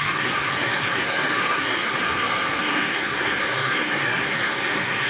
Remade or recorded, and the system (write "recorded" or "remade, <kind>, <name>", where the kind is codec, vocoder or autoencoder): remade, codec, SNAC